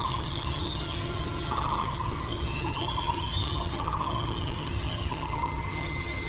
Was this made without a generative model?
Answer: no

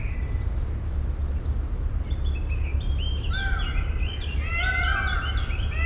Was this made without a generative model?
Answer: yes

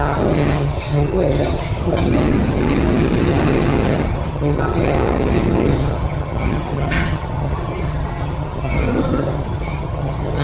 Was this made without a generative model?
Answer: no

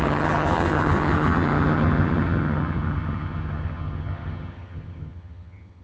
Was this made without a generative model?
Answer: no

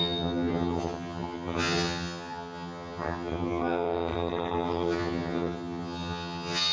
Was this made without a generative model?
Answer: no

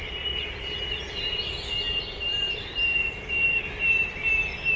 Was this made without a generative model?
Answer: yes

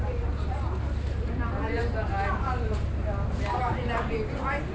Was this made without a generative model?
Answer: yes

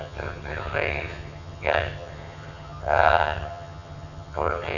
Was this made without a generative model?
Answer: no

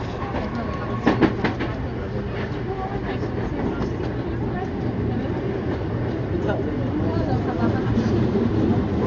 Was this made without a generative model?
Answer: yes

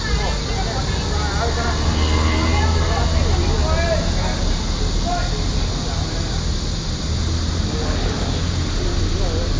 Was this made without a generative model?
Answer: yes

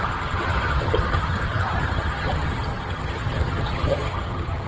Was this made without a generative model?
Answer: no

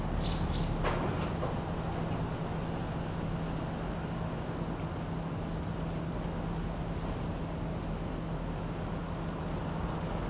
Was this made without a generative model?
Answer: yes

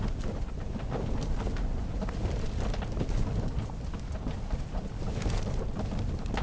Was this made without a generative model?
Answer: yes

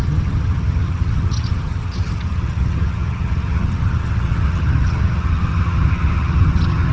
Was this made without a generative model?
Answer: no